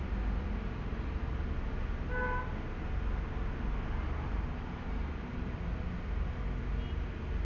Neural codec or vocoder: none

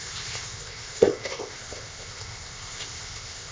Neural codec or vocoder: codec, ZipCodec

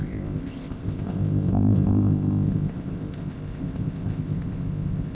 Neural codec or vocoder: codec, ZipCodec